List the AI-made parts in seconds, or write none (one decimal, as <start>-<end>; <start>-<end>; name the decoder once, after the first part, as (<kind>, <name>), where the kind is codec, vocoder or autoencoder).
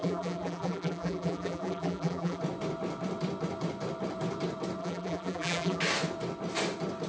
0.0-2.4 (vocoder, BigVGAN v2); 4.8-5.8